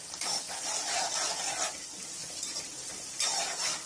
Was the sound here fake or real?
real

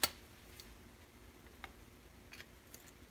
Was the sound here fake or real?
real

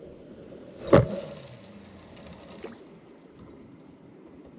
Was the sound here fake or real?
real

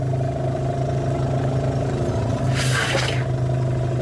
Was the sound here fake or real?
real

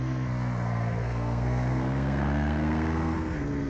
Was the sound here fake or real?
fake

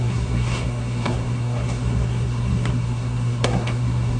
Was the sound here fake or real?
fake